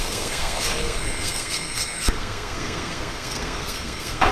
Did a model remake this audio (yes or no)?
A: yes